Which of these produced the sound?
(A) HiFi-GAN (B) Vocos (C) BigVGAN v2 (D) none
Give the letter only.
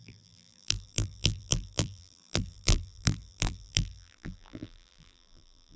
C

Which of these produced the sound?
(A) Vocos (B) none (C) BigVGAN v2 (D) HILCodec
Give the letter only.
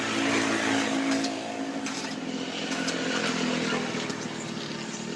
B